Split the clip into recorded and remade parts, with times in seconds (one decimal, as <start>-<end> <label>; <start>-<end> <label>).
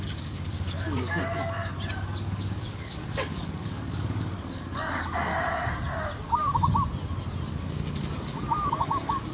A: 0.0-1.6 remade; 1.6-2.3 recorded; 2.3-5.3 remade; 5.3-7.5 recorded; 7.5-9.3 remade